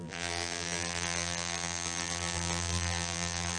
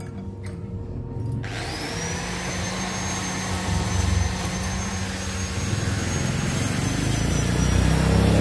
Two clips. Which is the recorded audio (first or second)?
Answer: second